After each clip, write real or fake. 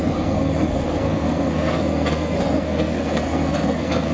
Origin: fake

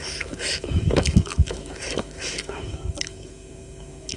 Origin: fake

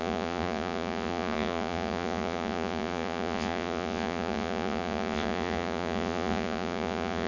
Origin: fake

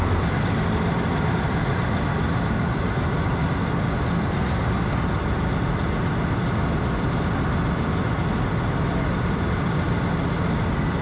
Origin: real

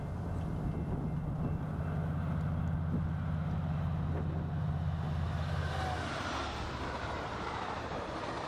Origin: real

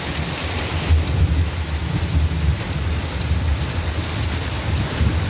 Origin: real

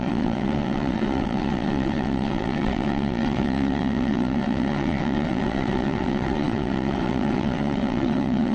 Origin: fake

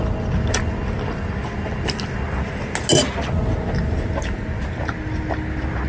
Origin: real